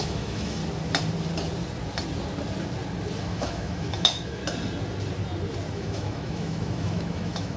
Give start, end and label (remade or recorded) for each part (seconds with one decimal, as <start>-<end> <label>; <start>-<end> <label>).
0.0-0.6 remade; 0.6-3.2 recorded; 3.2-4.4 remade; 4.4-5.7 recorded; 5.7-7.6 remade